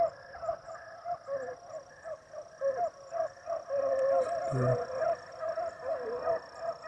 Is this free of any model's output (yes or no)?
yes